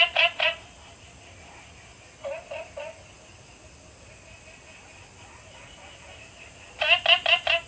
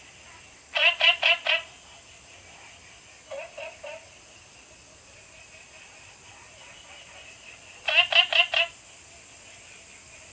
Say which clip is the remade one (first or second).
second